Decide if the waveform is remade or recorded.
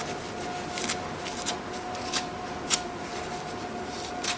recorded